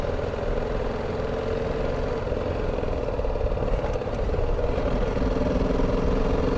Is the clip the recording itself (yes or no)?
yes